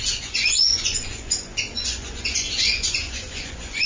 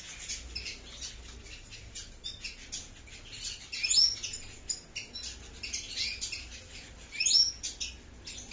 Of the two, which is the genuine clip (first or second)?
second